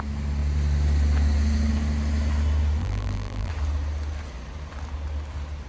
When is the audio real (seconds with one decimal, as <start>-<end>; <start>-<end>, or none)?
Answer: 0.0-2.8; 3.5-5.7